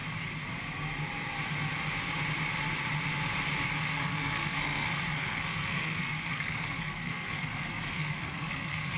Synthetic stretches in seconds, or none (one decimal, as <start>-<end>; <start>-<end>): 3.8-9.0